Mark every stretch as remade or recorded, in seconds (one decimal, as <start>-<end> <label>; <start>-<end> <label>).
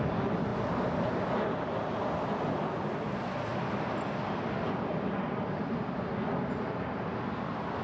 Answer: 0.0-0.5 remade; 0.5-1.3 recorded; 1.3-3.5 remade; 3.5-7.8 recorded